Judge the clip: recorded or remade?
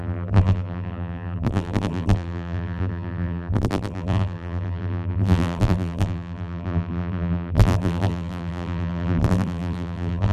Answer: remade